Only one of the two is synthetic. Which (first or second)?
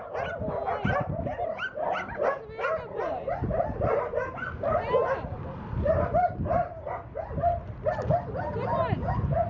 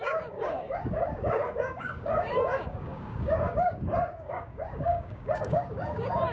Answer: second